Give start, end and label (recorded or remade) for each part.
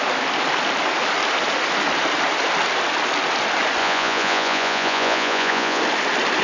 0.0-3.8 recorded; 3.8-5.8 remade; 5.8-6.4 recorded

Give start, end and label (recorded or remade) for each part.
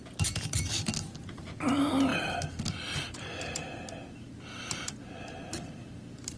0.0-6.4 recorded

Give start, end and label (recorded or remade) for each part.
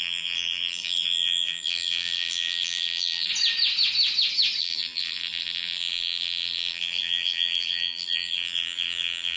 0.0-3.3 remade; 3.3-4.6 recorded; 4.6-9.4 remade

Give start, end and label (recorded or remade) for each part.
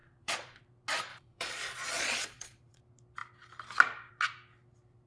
0.0-0.6 remade; 0.6-1.1 recorded; 1.1-2.8 remade; 2.8-5.1 recorded